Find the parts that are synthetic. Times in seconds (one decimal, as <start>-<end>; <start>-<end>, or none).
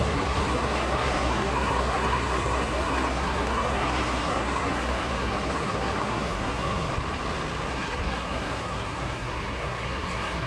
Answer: 0.0-6.9; 7.7-10.5